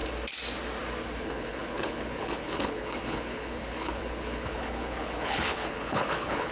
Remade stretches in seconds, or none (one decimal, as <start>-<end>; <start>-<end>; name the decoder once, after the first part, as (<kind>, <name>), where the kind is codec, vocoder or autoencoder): 1.2-6.5 (codec, HILCodec)